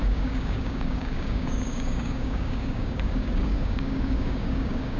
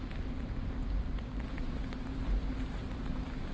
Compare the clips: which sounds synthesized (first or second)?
first